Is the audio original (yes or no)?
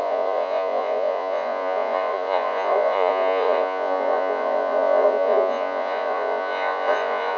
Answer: no